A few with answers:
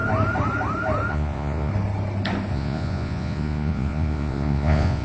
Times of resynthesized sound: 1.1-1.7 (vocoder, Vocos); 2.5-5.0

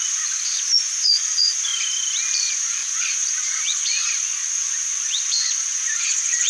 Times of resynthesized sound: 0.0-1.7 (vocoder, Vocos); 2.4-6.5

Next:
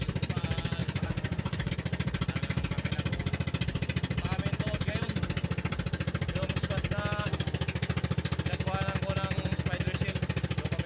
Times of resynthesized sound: 0.8-1.7 (vocoder, Vocos)

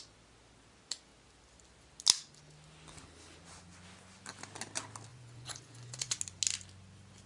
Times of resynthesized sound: 5.1-6.2 (vocoder, Vocos)

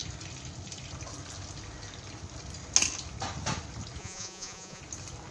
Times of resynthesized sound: 4.0-4.8 (vocoder, Vocos)